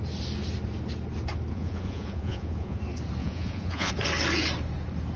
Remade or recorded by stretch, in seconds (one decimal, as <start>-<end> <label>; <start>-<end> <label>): 0.0-1.5 recorded; 1.5-2.8 remade; 2.8-3.2 recorded; 3.2-3.9 remade; 3.9-5.2 recorded